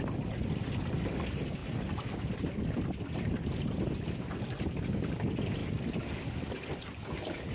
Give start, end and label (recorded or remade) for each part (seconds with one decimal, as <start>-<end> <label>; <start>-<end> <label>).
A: 0.0-5.6 recorded; 5.6-7.5 remade